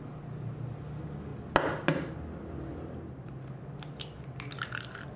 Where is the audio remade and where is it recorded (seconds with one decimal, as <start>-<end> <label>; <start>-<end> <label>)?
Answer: 0.0-5.2 recorded